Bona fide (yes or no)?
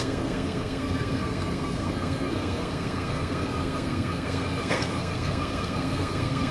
no